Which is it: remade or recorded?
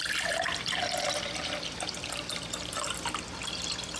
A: remade